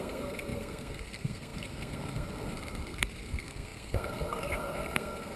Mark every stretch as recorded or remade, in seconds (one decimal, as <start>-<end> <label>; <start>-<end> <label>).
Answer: 0.0-5.4 remade